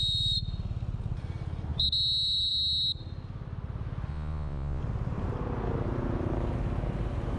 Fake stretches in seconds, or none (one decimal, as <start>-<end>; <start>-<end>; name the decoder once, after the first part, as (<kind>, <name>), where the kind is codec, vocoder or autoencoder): 4.1-4.8 (vocoder, Vocos)